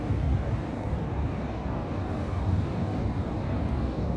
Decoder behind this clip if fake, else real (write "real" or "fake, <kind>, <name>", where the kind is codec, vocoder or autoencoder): fake, codec, DAC